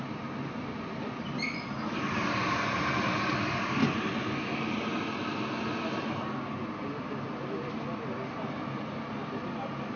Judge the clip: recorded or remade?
recorded